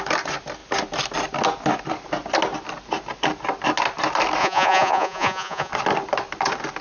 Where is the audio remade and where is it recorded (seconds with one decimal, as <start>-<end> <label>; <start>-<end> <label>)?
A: 0.0-4.4 recorded; 4.4-5.7 remade; 5.7-6.8 recorded